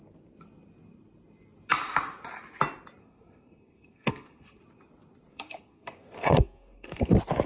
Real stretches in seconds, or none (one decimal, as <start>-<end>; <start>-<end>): 0.0-3.0; 4.6-5.3; 7.1-7.5